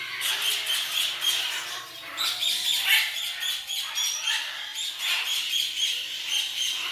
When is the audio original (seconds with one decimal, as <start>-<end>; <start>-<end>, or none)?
0.0-6.9